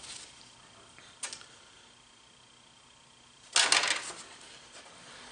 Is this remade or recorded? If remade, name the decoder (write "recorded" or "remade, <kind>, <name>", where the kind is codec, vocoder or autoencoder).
recorded